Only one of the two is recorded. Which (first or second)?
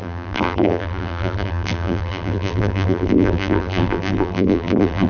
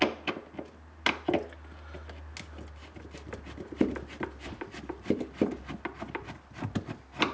second